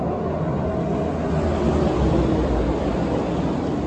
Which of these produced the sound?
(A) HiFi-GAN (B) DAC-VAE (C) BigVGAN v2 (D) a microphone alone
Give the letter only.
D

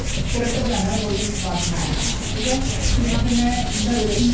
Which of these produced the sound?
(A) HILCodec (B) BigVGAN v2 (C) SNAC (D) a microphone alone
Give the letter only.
D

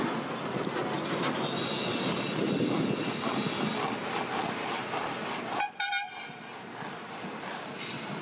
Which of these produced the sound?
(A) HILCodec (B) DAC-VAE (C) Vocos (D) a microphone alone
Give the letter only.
D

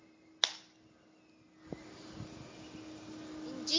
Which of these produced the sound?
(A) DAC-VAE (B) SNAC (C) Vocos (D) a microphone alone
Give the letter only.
D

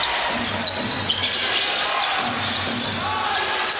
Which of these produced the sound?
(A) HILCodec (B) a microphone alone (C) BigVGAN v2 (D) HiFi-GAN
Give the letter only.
B